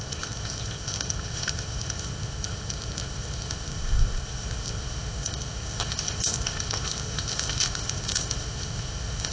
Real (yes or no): no